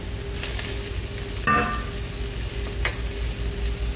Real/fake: real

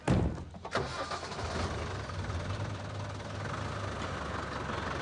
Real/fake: real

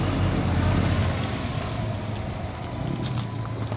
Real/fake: real